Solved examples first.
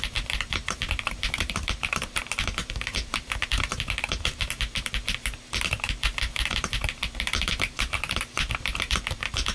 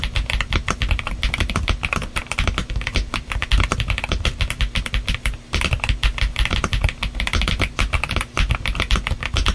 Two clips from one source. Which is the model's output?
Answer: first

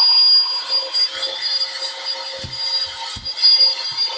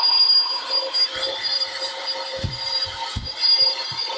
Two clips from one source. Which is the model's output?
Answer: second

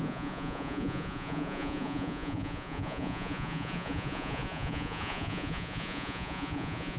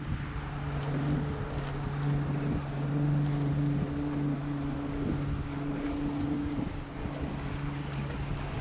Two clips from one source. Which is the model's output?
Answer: first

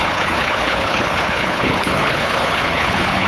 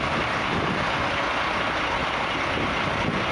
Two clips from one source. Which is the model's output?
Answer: first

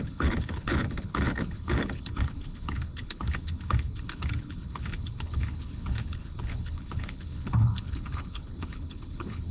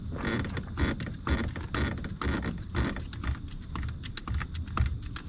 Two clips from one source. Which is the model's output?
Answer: first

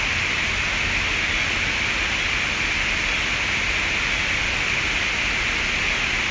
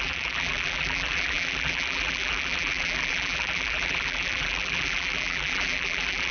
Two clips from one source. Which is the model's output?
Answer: second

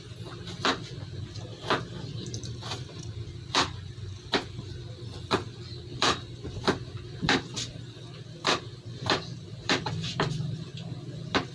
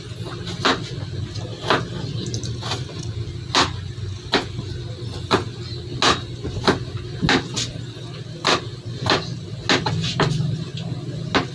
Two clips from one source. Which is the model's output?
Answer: first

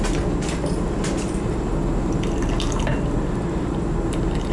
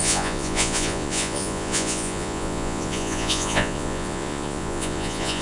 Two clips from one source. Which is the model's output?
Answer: second